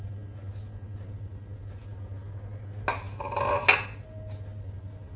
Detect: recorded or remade recorded